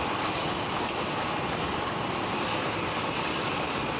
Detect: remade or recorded recorded